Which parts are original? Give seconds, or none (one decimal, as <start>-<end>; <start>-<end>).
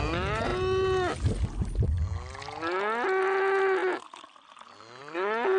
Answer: 0.0-5.6